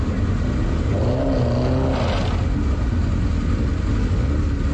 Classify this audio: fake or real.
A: real